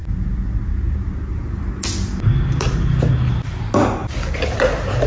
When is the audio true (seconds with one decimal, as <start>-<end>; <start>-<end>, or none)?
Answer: 0.0-5.1